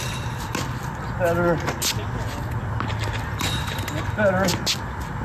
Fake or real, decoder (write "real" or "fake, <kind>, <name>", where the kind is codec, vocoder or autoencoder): real